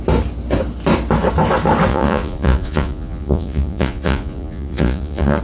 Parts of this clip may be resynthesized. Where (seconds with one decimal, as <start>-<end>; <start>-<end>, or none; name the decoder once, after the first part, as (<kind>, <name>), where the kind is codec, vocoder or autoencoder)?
1.9-5.4 (vocoder, Vocos)

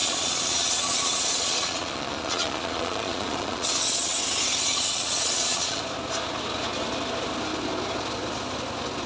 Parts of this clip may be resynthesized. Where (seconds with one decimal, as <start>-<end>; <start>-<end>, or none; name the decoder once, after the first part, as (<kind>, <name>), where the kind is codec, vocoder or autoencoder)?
0.0-4.2 (vocoder, Vocos); 4.7-5.8

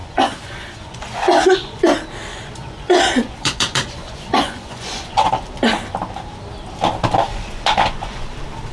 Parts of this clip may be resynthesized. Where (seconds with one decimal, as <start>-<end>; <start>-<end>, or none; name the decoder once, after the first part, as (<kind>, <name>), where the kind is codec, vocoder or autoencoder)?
0.0-1.8 (vocoder, Vocos); 2.3-5.3; 7.3-8.2

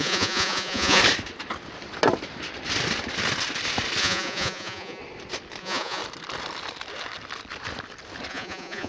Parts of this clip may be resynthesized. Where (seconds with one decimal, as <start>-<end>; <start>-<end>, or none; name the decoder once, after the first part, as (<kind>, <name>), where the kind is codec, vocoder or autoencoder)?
0.0-1.0 (vocoder, Vocos); 4.0-5.0; 5.6-6.0; 8.3-8.9